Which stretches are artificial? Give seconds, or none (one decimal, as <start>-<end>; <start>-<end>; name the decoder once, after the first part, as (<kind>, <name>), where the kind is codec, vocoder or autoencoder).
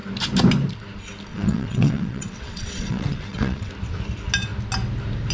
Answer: 1.3-3.7 (vocoder, WaveNeXt)